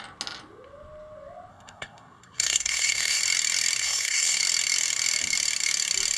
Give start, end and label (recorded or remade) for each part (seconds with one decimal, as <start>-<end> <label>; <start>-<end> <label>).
0.0-1.5 recorded; 1.5-3.2 remade; 3.2-3.8 recorded; 3.8-4.4 remade; 4.4-6.2 recorded